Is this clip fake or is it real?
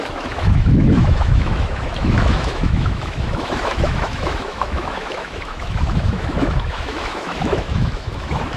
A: fake